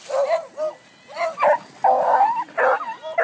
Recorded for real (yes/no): yes